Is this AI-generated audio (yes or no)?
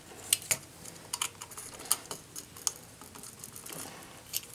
no